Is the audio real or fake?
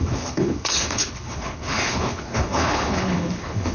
fake